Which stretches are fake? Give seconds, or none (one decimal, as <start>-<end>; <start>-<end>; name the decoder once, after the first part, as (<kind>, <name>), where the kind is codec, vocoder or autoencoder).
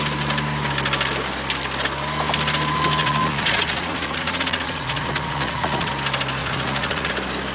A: 3.0-5.9 (vocoder, Vocos); 6.4-7.1